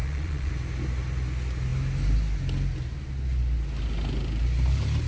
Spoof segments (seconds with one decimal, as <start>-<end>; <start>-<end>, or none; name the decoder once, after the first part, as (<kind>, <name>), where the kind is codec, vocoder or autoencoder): 0.0-0.5 (vocoder, Vocos)